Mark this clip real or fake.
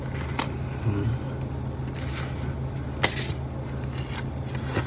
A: real